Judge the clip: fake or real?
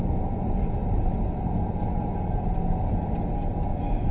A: real